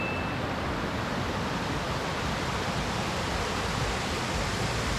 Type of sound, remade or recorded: recorded